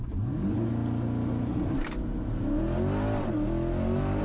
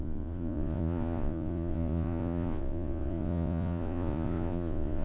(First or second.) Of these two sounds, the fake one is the second